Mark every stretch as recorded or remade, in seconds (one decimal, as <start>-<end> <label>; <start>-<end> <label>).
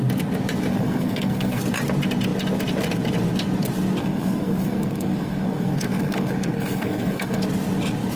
0.0-0.7 recorded; 0.7-1.6 remade; 1.6-4.0 recorded; 4.0-7.4 remade; 7.4-8.2 recorded